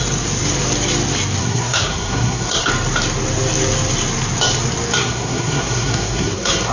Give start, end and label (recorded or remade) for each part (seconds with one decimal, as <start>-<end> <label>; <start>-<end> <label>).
0.0-1.4 recorded; 1.4-2.7 remade; 2.7-5.0 recorded; 5.0-6.7 remade